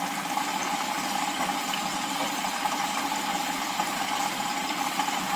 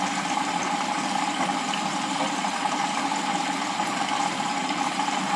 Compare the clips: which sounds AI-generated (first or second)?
first